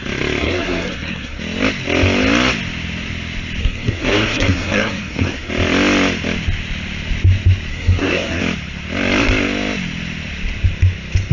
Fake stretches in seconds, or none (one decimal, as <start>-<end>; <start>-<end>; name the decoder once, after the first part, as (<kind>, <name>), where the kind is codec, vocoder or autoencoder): 0.4-1.4 (codec, SNAC); 3.6-5.5; 7.7-8.4